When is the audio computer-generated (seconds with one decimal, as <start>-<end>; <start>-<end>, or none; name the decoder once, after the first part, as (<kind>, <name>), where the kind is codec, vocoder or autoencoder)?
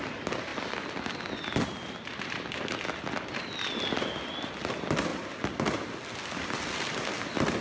none